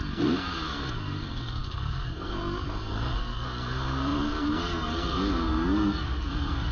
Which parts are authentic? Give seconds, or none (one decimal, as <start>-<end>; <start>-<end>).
none

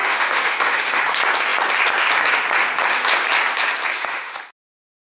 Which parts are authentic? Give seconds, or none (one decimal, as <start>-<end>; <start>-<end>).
1.0-3.9; 4.4-5.2

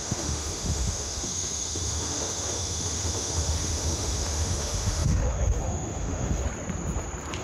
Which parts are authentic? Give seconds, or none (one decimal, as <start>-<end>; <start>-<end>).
6.4-7.4

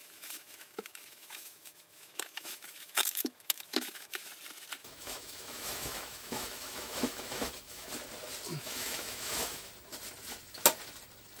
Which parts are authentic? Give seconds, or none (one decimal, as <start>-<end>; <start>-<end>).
4.3-4.8; 7.9-8.5; 9.7-11.4

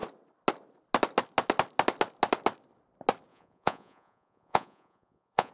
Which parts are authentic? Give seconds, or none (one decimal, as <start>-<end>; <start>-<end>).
0.0-3.3

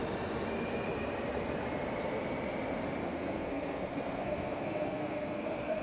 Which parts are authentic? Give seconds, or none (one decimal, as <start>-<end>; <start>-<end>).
0.0-3.0

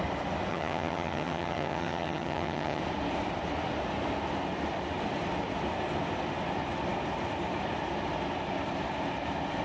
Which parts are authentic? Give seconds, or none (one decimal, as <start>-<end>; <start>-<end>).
0.0-0.5; 2.8-9.6